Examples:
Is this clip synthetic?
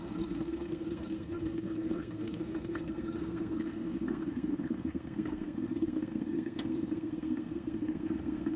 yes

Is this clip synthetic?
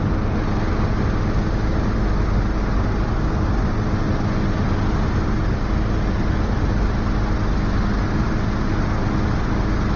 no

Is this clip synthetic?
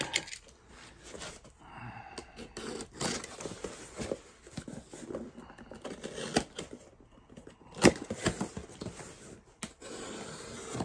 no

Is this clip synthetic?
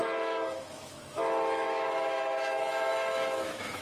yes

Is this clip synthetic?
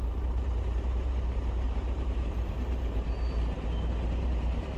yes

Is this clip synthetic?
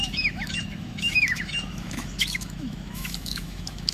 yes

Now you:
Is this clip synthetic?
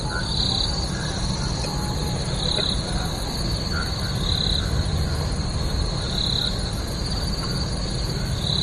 no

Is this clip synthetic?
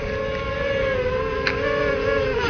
no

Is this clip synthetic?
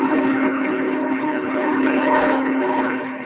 yes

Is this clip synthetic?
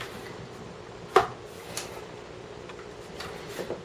no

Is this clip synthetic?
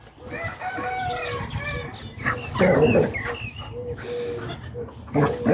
no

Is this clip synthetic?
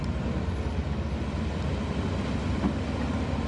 no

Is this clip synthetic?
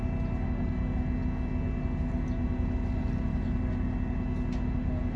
no